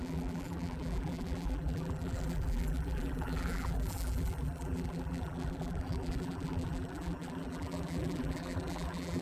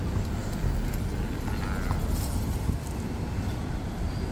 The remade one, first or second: first